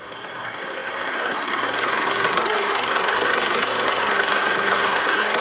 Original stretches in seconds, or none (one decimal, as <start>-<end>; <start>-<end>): none